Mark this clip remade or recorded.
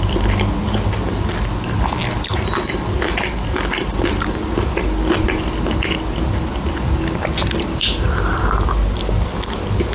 recorded